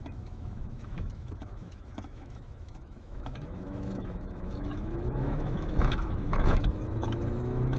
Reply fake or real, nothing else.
fake